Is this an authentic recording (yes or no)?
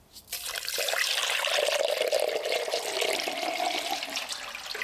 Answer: yes